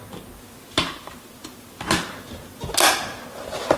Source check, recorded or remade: recorded